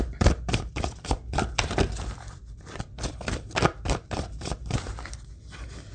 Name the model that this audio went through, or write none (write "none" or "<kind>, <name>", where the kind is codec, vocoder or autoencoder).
vocoder, BigVGAN v2